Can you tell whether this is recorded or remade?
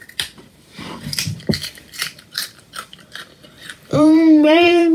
remade